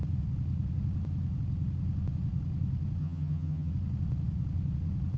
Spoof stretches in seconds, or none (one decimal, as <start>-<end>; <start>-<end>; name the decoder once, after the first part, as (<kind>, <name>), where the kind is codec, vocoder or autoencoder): 3.0-3.7 (vocoder, HiFi-GAN)